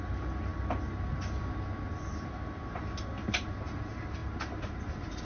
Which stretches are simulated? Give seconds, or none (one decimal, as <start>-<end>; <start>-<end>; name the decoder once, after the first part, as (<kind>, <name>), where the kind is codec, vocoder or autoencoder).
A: none